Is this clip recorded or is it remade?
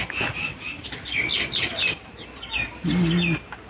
recorded